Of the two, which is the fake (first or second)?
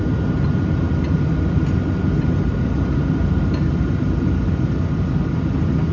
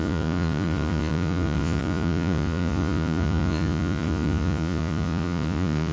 second